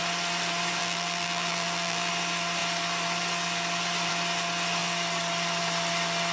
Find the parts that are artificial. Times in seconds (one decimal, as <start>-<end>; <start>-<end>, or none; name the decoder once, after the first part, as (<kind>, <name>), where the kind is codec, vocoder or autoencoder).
0.8-2.1 (vocoder, BigVGAN v2)